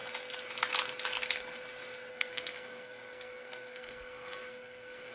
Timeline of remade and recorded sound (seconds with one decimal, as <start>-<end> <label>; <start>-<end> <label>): 0.0-2.1 recorded; 2.1-5.1 remade